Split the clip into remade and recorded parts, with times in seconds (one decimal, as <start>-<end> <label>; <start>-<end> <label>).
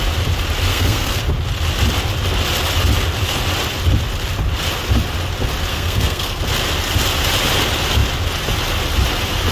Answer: 0.0-0.7 recorded; 0.7-1.2 remade; 1.2-5.7 recorded; 5.7-6.4 remade; 6.4-9.5 recorded